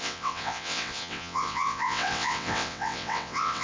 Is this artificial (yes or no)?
yes